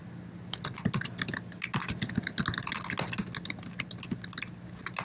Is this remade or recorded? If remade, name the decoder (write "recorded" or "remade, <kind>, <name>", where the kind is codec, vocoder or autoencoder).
recorded